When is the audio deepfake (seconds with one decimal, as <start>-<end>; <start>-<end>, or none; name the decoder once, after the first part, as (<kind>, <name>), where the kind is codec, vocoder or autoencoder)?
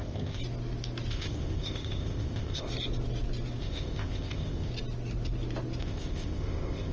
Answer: 0.0-0.4 (codec, ZipCodec); 1.1-2.7; 3.6-4.7; 5.8-6.9